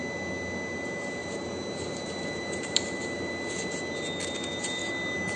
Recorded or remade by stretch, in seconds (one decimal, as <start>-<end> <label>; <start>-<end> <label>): 0.0-1.2 recorded; 1.2-3.3 remade; 3.3-5.4 recorded